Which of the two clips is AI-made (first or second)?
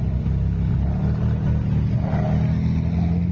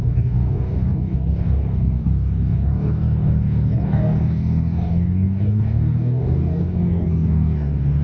second